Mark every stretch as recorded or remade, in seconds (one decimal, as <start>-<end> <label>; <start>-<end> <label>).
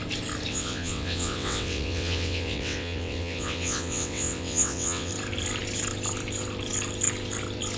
0.0-0.5 recorded; 0.5-5.1 remade; 5.1-7.8 recorded